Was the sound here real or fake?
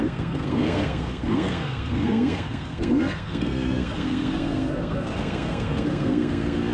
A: fake